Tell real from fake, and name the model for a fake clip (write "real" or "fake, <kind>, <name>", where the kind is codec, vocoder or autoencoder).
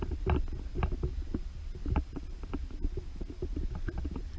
real